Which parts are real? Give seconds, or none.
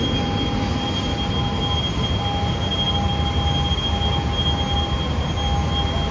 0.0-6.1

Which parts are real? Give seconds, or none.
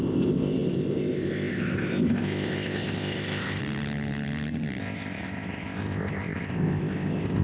3.6-4.8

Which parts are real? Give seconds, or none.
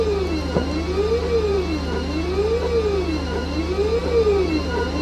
0.0-5.0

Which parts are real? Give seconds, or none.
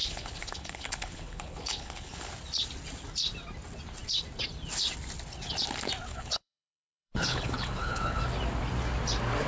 2.3-6.1; 8.2-9.5